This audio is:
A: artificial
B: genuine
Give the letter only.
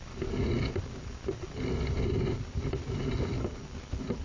B